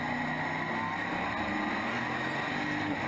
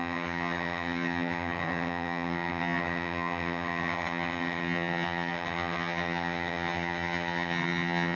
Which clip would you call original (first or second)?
first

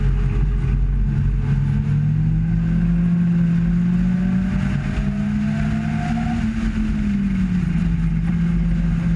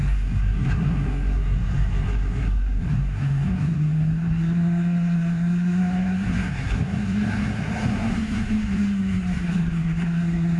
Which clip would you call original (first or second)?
first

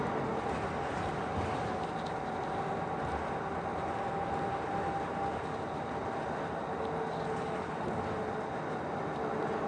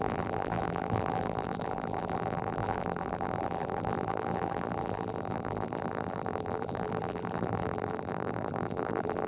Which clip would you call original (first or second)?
first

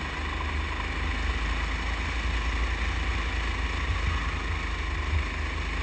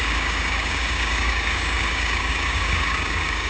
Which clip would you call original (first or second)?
first